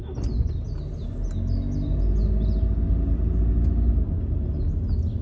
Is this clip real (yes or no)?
yes